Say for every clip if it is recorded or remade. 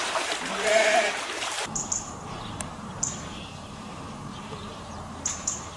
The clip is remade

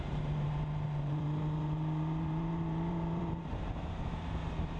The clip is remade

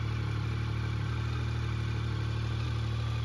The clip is recorded